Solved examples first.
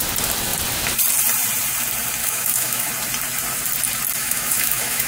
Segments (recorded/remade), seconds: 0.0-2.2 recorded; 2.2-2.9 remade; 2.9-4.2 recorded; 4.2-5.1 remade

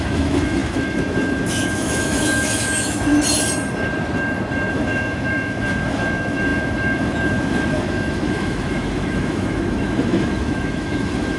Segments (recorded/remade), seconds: 0.0-3.1 remade; 3.1-4.7 recorded; 4.7-11.4 remade